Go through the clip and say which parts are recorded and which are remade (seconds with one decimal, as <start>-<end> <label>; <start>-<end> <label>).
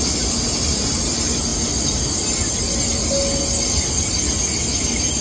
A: 0.0-5.2 recorded